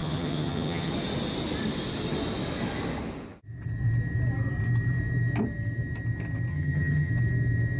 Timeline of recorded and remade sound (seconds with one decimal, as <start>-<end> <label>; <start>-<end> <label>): 0.0-0.9 remade; 0.9-6.5 recorded; 6.5-7.1 remade; 7.1-7.8 recorded

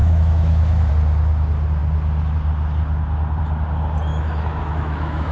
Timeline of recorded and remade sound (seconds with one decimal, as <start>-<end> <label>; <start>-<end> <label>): 0.0-0.9 remade; 0.9-4.1 recorded; 4.1-5.3 remade

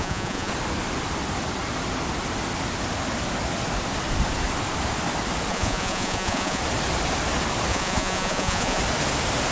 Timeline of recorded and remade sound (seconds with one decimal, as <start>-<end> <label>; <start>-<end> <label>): 0.0-0.5 remade; 0.5-5.5 recorded; 5.5-6.6 remade; 6.6-7.7 recorded; 7.7-8.8 remade; 8.8-9.5 recorded

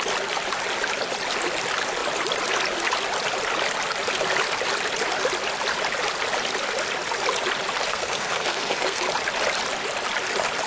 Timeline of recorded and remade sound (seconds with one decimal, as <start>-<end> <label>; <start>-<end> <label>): 0.0-7.9 recorded; 7.9-9.0 remade; 9.0-10.7 recorded